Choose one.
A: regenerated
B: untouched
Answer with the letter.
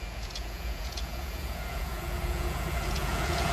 A